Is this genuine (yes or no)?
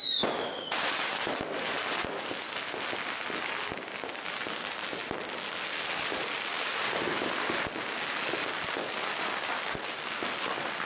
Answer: yes